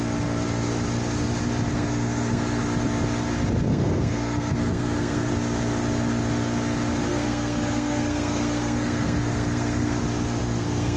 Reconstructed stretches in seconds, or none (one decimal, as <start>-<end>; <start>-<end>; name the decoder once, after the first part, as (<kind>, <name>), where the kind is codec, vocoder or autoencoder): 1.7-2.6 (codec, SNAC); 3.7-5.3; 7.1-10.0; 10.4-11.0

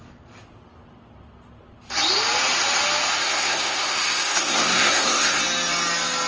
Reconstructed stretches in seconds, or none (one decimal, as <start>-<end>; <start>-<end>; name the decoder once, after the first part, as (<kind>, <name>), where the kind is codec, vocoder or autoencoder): 3.2-5.4 (codec, SNAC)

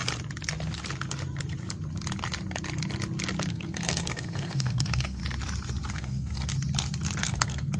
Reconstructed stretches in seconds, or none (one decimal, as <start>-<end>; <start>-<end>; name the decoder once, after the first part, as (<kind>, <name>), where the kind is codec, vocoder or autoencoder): 3.5-5.2 (codec, SNAC); 5.9-6.5; 7.2-7.8

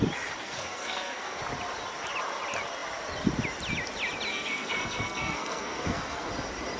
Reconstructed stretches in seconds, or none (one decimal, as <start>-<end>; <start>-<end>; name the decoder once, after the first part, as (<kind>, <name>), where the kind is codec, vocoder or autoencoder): 0.4-1.4 (codec, SNAC); 4.3-6.3

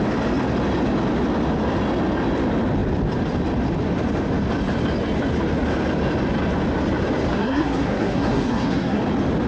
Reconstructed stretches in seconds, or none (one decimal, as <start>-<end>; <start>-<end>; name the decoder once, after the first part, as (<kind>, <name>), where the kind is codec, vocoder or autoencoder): 7.3-9.0 (codec, SNAC)

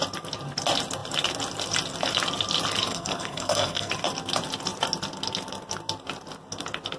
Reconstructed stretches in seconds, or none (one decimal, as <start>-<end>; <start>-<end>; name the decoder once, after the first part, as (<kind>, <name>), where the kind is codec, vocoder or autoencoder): 2.9-3.9 (codec, SNAC)

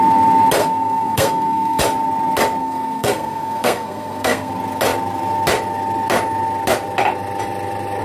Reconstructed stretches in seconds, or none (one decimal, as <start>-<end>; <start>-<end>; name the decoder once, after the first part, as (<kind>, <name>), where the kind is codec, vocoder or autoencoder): 0.6-1.8 (codec, SNAC); 2.6-4.5

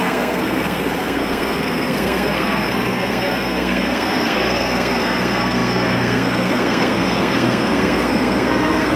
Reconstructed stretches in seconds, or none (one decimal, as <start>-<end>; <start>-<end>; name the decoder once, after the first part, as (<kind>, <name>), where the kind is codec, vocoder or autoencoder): 0.0-9.0 (codec, SNAC)